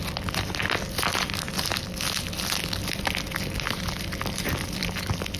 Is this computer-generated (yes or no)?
no